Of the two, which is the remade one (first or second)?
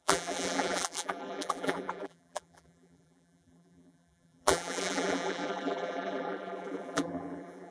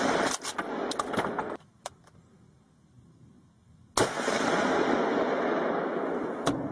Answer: first